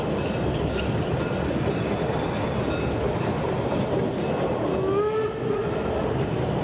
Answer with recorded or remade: recorded